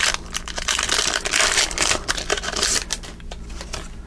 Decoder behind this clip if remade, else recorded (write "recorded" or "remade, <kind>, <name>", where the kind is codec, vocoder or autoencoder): recorded